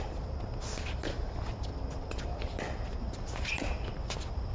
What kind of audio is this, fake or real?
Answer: real